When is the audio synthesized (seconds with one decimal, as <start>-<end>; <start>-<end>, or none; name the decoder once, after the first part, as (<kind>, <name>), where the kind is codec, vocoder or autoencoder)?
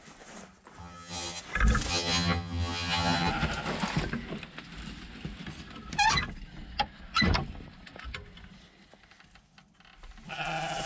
0.8-1.4 (vocoder, HiFi-GAN); 1.9-3.3